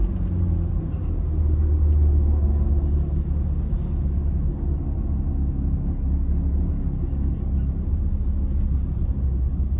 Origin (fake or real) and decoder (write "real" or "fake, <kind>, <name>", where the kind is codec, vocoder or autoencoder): real